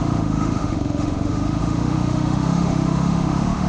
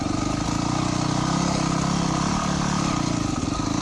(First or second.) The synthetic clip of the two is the first